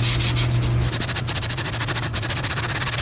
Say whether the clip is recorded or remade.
recorded